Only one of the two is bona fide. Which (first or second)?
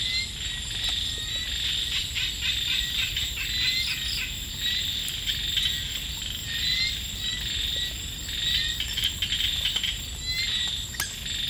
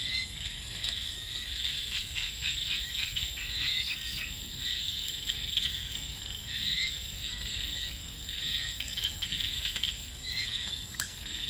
first